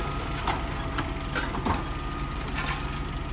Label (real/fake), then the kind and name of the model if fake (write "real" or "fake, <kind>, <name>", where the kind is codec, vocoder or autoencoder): real